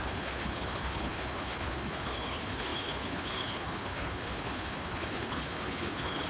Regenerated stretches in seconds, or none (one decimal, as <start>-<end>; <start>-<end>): 0.0-6.3